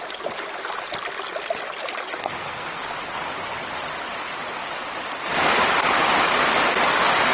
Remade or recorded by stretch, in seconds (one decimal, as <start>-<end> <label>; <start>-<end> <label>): 0.0-2.2 recorded; 2.2-2.8 remade; 2.8-7.3 recorded